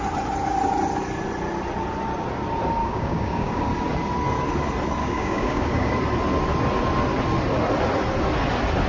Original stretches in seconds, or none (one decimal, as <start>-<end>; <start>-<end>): 0.0-2.8; 3.6-5.0; 5.9-8.9